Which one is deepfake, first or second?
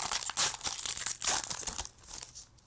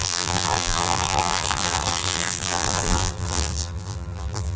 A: second